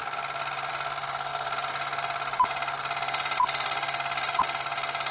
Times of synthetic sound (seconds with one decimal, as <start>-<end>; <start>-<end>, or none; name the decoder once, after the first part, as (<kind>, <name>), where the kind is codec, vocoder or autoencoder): none